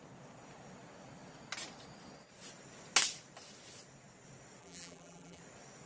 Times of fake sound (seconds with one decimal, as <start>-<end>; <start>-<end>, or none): 4.6-5.4